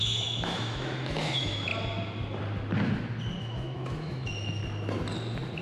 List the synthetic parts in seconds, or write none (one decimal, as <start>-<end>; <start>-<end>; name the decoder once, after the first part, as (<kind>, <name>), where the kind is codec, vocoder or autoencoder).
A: 0.0-1.7 (autoencoder, DAC-VAE); 3.4-4.6